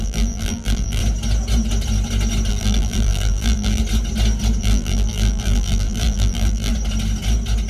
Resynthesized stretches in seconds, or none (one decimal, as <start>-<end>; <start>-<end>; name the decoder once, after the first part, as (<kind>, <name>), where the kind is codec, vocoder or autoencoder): 0.0-1.0 (vocoder, BigVGAN v2); 2.5-3.8; 4.6-6.7